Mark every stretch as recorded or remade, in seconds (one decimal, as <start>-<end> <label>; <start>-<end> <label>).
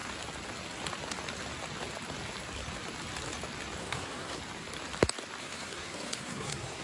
0.0-3.8 recorded; 3.8-4.4 remade; 4.4-5.4 recorded; 5.4-6.8 remade